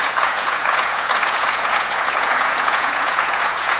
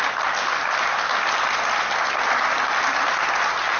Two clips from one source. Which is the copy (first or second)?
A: first